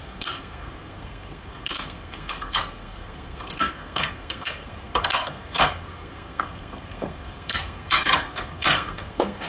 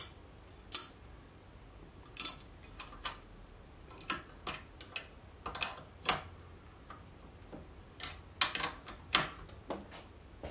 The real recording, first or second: second